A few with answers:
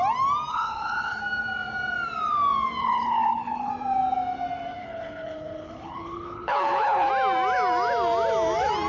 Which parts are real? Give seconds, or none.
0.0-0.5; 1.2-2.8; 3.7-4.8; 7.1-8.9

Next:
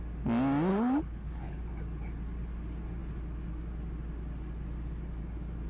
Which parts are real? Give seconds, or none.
0.0-0.7; 1.6-5.7